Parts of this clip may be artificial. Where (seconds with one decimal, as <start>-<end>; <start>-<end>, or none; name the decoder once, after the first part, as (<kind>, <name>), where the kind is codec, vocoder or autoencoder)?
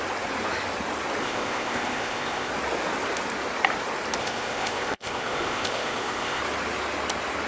1.2-2.5 (codec, ZipCodec); 4.2-6.4